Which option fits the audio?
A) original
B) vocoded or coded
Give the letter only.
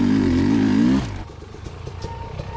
A